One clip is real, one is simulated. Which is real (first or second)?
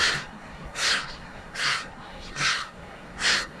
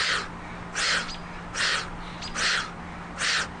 second